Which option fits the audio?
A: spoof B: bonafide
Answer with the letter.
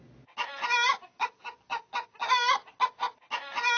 B